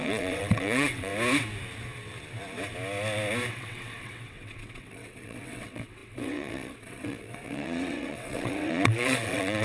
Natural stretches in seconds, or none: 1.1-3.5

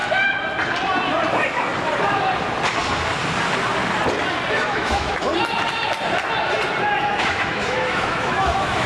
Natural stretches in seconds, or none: 0.0-4.5; 5.3-7.0

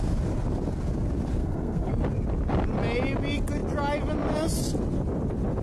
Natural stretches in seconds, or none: 0.0-1.4; 1.9-5.6